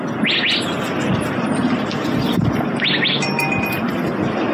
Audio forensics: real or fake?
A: real